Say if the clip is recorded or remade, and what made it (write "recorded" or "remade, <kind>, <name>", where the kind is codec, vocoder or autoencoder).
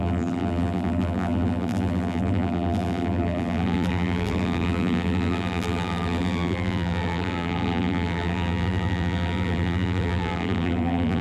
remade, vocoder, BigVGAN v2